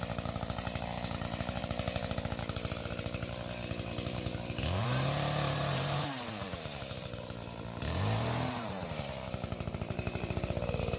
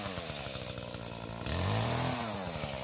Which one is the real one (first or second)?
second